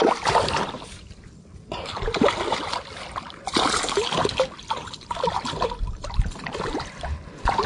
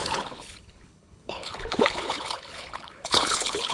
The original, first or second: first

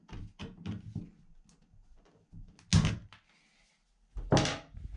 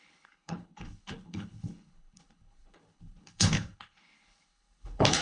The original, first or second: first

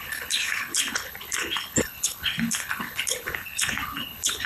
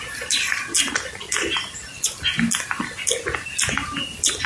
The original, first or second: second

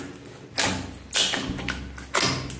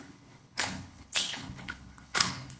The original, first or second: first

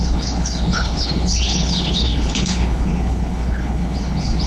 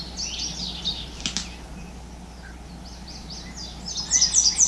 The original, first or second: second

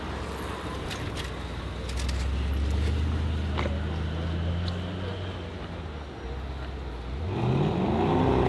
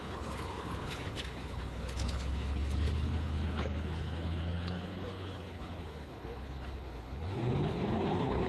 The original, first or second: first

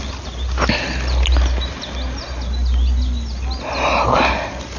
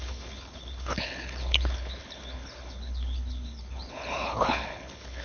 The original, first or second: first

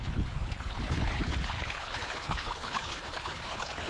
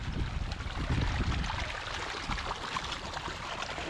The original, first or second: second